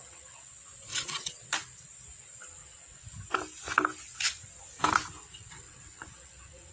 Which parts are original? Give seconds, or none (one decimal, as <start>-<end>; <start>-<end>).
0.5-0.9; 1.5-2.6; 3.1-5.2